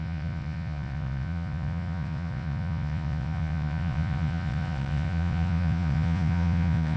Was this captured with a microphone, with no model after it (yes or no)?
no